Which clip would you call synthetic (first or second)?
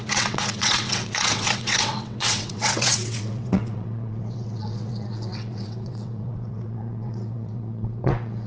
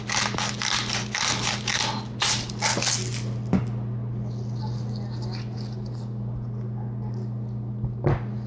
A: first